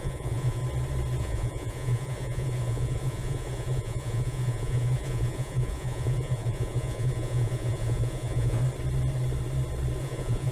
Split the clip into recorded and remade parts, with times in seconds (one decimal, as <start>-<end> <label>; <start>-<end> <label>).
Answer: 0.0-0.6 remade; 0.6-1.2 recorded; 1.2-8.6 remade; 8.6-10.0 recorded; 10.0-10.5 remade